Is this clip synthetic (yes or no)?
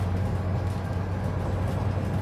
no